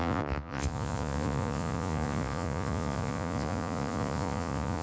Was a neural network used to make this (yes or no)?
yes